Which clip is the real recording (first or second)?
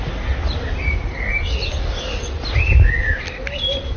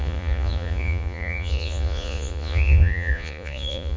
first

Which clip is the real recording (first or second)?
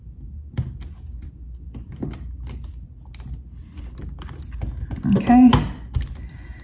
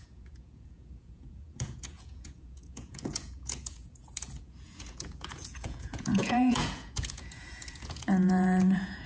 first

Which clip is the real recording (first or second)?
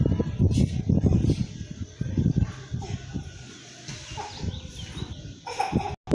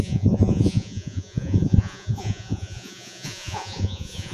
first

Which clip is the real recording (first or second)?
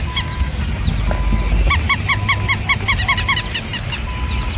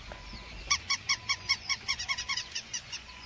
first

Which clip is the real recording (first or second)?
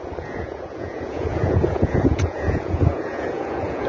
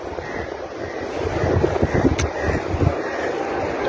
second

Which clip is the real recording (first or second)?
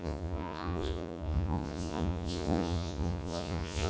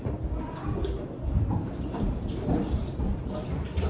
second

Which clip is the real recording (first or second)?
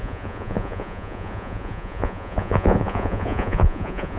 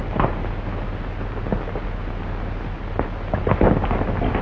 second